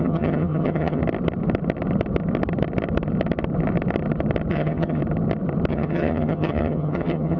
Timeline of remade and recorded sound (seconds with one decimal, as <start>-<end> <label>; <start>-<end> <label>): 0.0-1.0 remade; 1.0-4.5 recorded; 4.5-5.0 remade; 5.0-5.7 recorded; 5.7-7.4 remade

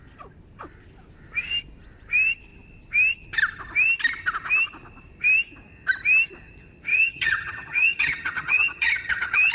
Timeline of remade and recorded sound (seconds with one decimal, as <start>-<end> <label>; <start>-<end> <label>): 0.0-6.9 recorded; 6.9-9.5 remade

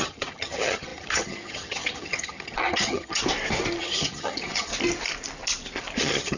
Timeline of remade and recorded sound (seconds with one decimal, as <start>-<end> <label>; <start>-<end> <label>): 0.0-3.2 remade; 3.2-3.8 recorded; 3.8-4.7 remade; 4.7-6.0 recorded; 6.0-6.4 remade

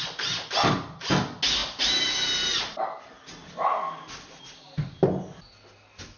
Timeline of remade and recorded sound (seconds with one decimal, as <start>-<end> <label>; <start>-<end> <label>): 0.0-6.2 recorded

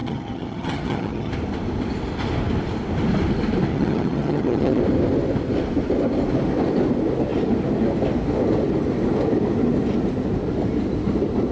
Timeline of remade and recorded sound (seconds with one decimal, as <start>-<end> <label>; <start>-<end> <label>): 0.0-1.3 remade; 1.3-3.7 recorded; 3.7-4.8 remade; 4.8-11.5 recorded

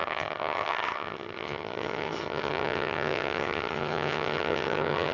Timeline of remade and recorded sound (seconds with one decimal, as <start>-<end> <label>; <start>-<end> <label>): 0.0-5.1 remade

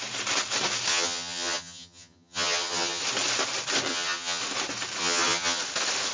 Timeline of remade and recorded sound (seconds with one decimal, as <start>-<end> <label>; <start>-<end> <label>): 0.0-0.9 recorded; 0.9-3.0 remade; 3.0-3.9 recorded; 3.9-4.4 remade; 4.4-5.0 recorded; 5.0-5.6 remade; 5.6-6.1 recorded

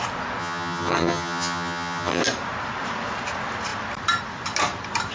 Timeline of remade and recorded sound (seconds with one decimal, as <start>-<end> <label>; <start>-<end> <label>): 0.0-0.4 recorded; 0.4-2.2 remade; 2.2-5.1 recorded